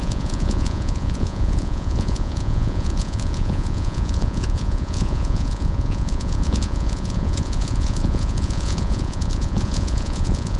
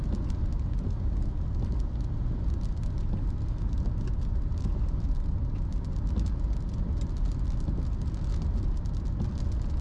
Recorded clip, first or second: second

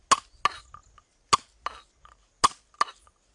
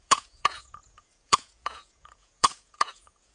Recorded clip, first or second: first